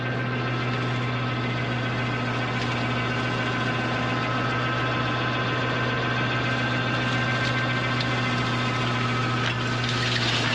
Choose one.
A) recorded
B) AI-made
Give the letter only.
A